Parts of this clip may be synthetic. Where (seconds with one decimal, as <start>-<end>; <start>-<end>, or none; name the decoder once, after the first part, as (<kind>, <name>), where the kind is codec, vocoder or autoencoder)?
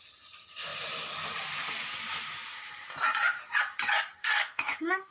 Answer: 4.2-5.1 (codec, SNAC)